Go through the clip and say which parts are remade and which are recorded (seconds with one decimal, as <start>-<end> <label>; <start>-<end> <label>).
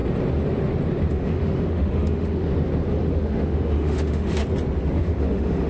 0.0-1.1 recorded; 1.1-2.5 remade; 2.5-3.1 recorded; 3.1-4.4 remade; 4.4-4.9 recorded; 4.9-5.7 remade